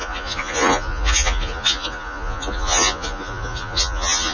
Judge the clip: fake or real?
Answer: fake